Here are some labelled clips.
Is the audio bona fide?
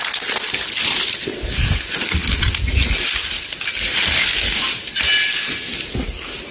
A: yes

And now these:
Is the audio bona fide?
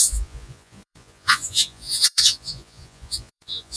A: no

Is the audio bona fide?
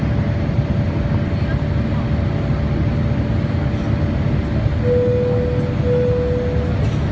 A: yes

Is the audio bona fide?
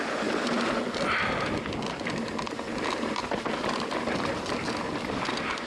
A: yes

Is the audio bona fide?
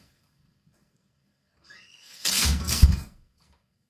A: no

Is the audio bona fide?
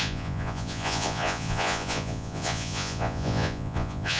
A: no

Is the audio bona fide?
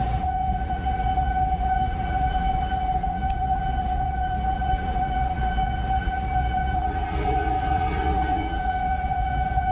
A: no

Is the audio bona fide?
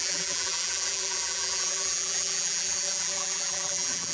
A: no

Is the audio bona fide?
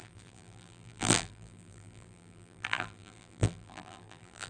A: no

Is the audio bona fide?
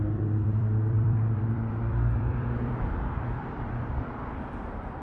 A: no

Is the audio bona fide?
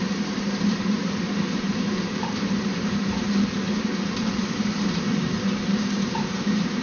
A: no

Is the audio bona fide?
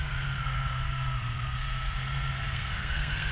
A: no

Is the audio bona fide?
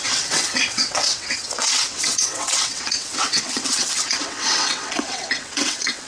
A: no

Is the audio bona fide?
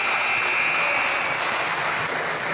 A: yes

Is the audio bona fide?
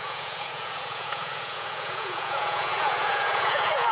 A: no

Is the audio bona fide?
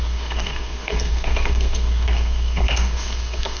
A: no